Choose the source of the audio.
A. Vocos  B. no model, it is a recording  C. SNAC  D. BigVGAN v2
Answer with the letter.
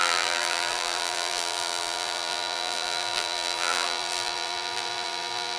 D